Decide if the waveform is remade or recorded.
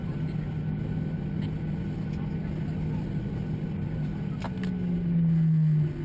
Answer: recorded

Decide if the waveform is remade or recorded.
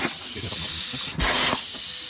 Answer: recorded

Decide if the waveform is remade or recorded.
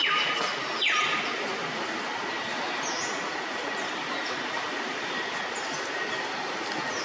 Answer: recorded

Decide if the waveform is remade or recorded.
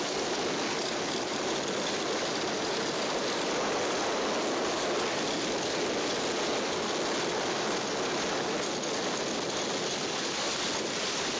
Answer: recorded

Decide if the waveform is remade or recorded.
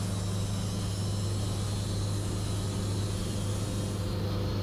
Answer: recorded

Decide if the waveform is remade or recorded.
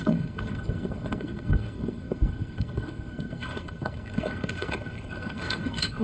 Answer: remade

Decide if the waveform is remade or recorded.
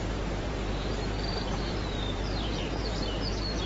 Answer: remade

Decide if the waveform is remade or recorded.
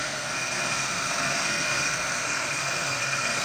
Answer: remade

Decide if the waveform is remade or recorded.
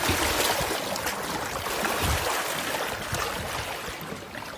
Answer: recorded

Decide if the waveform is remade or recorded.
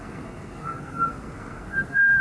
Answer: remade